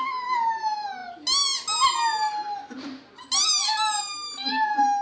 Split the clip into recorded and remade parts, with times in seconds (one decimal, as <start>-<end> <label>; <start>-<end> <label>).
0.0-5.0 recorded